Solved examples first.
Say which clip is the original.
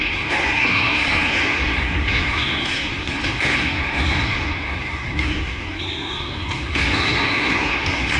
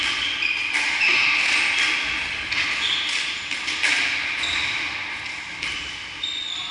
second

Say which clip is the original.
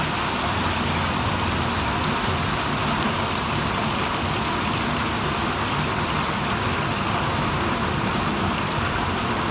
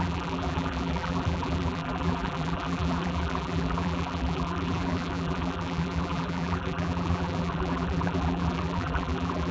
first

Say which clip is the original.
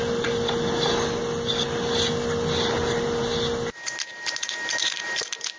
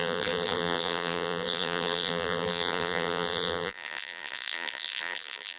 first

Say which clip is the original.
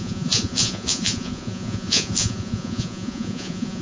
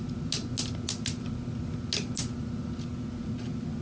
second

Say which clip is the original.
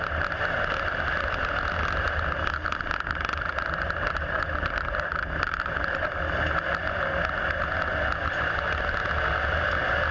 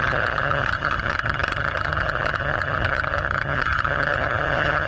first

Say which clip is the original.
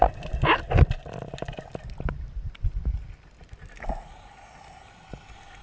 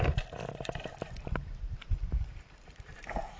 first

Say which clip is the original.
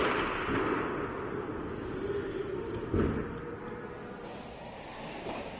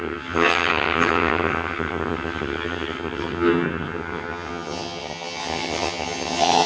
first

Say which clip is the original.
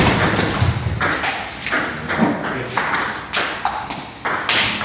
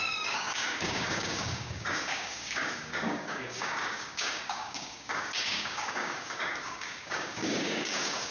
first